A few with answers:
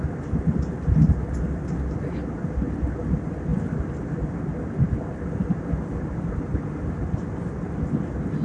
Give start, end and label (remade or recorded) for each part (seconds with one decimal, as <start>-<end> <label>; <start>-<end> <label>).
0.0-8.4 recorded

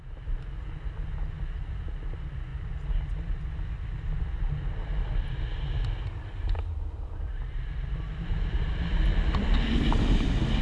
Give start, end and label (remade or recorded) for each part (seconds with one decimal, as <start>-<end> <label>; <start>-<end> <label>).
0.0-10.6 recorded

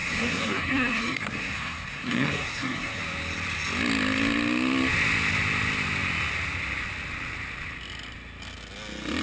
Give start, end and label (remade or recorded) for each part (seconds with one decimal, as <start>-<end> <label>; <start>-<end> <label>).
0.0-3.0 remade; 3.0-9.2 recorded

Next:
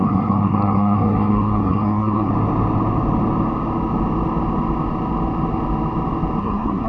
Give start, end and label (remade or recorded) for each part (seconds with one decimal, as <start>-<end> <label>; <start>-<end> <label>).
0.0-2.3 remade; 2.3-6.4 recorded; 6.4-6.9 remade

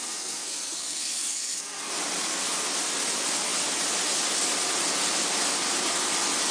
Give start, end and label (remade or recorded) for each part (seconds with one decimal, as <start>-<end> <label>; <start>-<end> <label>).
0.0-1.9 remade; 1.9-6.5 recorded

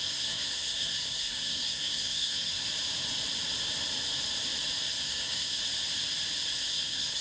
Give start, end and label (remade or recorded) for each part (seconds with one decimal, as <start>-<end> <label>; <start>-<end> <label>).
0.0-2.7 remade; 2.7-5.0 recorded; 5.0-5.6 remade; 5.6-6.7 recorded; 6.7-7.2 remade

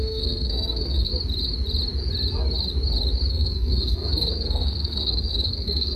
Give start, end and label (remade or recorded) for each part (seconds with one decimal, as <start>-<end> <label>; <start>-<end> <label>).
0.0-1.1 remade; 1.1-3.3 recorded; 3.3-6.0 remade